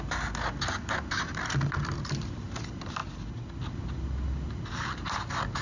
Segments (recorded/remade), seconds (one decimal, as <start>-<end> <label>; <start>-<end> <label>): 0.0-5.6 recorded